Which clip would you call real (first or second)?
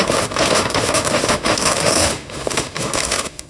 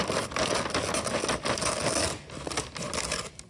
second